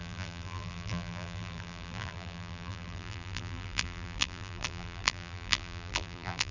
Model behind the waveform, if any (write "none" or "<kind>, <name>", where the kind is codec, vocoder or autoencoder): vocoder, BigVGAN v2